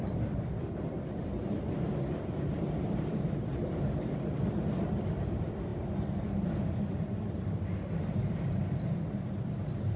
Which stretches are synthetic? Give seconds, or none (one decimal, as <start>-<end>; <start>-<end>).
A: 0.0-5.7; 6.9-10.0

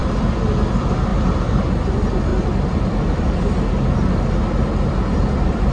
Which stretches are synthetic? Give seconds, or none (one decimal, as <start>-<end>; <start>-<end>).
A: 0.0-0.7; 2.3-3.6

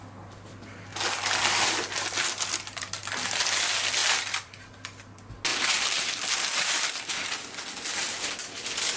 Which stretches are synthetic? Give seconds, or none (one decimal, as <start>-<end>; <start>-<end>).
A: 4.0-4.6

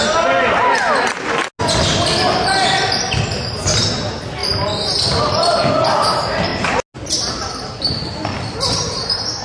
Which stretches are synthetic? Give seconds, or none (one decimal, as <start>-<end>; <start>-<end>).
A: none

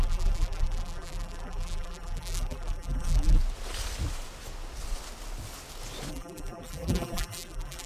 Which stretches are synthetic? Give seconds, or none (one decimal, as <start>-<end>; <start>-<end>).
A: 0.0-3.4; 6.1-7.9

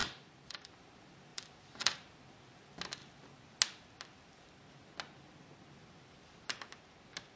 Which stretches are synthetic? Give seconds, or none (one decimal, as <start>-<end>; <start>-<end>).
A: 0.0-0.7; 1.3-2.2